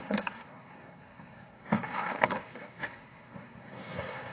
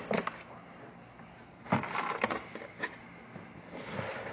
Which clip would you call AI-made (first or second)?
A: first